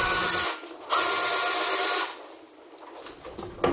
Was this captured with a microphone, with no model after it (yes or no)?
yes